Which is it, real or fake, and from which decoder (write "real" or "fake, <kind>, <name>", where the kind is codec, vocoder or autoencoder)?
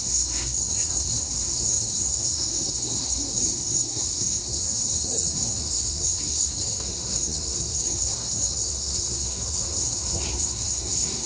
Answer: fake, codec, SNAC